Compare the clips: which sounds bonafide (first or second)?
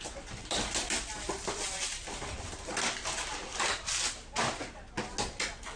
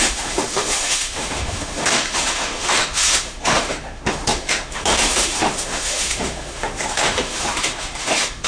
first